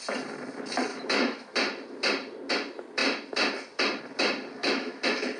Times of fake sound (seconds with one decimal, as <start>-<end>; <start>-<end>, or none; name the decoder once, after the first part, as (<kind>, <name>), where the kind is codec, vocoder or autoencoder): 0.9-1.5 (autoencoder, DAC-VAE); 4.6-5.4